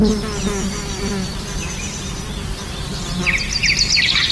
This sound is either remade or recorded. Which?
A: recorded